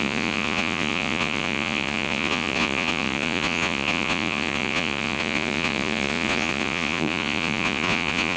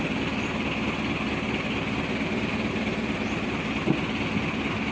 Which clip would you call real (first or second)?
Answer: second